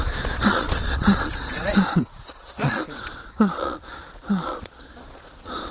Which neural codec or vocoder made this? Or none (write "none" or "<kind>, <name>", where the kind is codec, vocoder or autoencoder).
vocoder, Vocos